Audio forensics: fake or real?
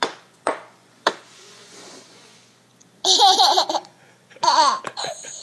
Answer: fake